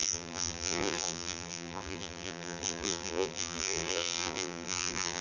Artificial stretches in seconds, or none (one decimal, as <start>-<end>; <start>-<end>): 0.0-5.2